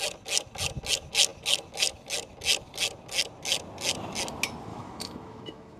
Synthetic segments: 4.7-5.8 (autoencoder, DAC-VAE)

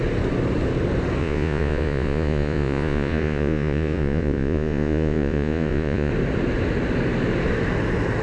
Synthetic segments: 1.2-6.1 (vocoder, Vocos)

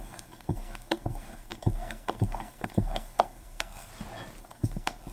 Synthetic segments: 0.0-3.9 (codec, SNAC); 4.4-5.1

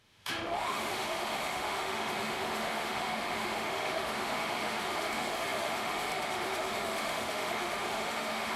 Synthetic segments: 0.0-8.6 (autoencoder, DAC-VAE)

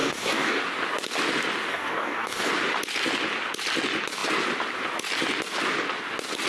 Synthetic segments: 0.0-0.6 (codec, DAC); 1.7-2.5